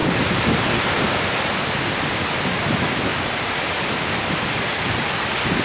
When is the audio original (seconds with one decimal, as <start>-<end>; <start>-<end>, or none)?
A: 0.0-3.1; 3.6-5.6